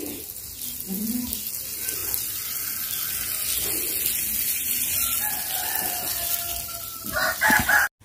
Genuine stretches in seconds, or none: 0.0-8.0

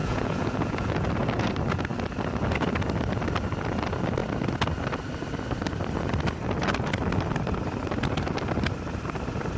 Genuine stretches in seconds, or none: 1.1-9.6

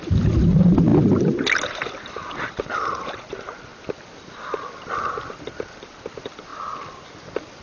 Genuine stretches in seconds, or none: 0.0-7.6